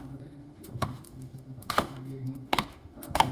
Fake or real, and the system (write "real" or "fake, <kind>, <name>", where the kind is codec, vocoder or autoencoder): fake, autoencoder, DAC-VAE